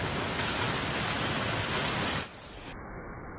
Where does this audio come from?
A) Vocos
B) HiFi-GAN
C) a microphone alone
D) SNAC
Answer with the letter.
C